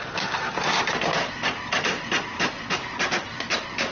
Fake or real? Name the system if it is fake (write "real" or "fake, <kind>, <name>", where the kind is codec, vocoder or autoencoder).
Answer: real